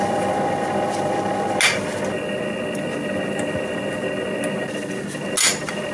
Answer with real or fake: real